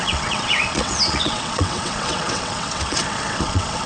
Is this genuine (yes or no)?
no